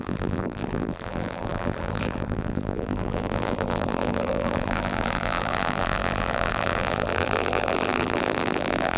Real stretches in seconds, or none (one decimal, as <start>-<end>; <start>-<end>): none